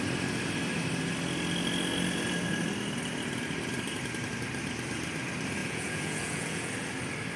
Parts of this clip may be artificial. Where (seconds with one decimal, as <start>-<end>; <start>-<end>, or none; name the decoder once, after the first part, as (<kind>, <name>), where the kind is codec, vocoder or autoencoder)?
5.6-6.7 (vocoder, Vocos)